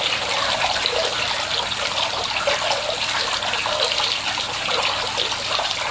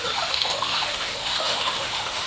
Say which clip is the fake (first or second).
second